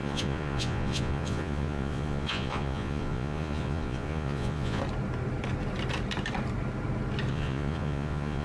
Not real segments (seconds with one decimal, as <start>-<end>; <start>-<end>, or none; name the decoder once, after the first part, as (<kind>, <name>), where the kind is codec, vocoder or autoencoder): 0.0-4.8 (vocoder, Vocos); 7.3-8.4